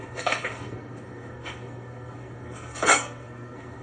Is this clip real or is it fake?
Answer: fake